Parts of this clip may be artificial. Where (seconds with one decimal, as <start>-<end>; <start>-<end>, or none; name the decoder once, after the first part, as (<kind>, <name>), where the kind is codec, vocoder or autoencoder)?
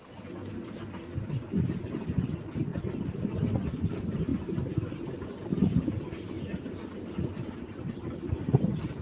none